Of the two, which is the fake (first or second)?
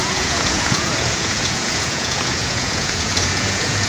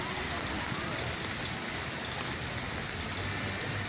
first